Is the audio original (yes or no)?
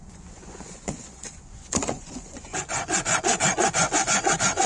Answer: no